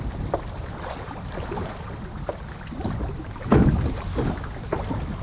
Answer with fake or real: real